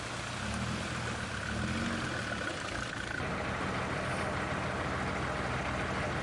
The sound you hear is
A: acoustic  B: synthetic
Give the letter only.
A